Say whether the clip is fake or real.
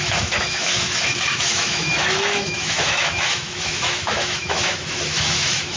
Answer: fake